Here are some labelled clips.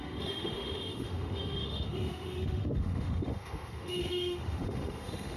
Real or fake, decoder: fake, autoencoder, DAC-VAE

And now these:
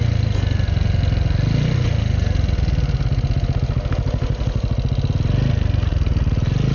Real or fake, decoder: real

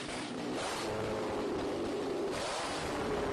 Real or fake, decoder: real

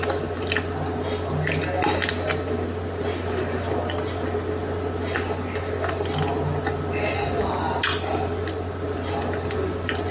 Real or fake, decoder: real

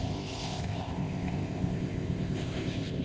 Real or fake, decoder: fake, codec, ZipCodec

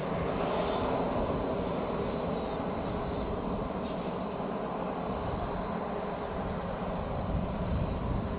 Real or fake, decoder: real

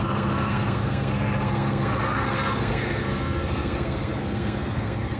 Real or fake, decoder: fake, codec, SNAC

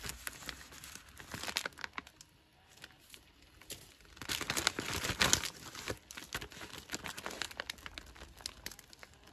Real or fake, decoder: real